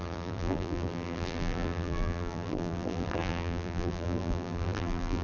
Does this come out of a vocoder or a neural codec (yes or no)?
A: yes